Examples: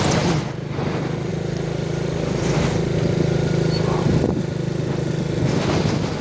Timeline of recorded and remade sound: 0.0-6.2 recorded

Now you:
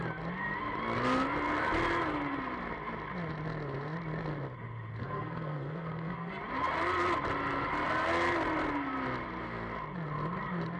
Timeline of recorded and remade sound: 0.0-5.0 recorded; 5.0-6.3 remade; 6.3-10.8 recorded

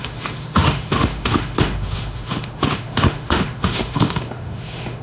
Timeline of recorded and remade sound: 0.0-5.0 remade

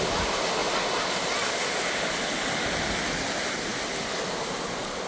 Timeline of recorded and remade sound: 0.0-5.1 recorded

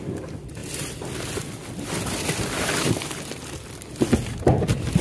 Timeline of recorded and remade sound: 0.0-5.0 recorded

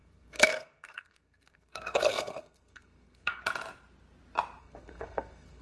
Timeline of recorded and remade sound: 0.0-3.4 remade; 3.4-4.6 recorded; 4.6-5.6 remade

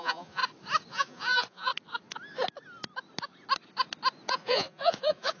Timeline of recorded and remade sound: 0.0-0.4 remade; 0.4-0.9 recorded; 0.9-1.7 remade; 1.7-4.3 recorded; 4.3-5.4 remade